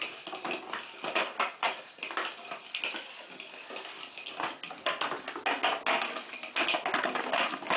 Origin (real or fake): real